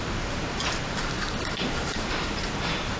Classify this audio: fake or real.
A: fake